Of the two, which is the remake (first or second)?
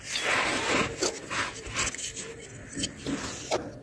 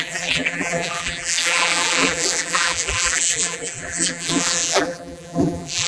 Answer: second